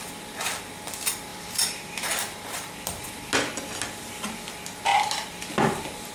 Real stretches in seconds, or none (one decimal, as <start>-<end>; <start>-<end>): 0.0-1.3; 3.3-4.9; 5.5-6.1